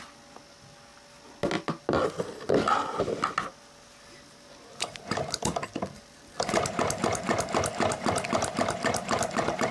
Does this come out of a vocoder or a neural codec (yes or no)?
no